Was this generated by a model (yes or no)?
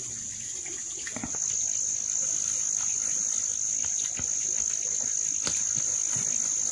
no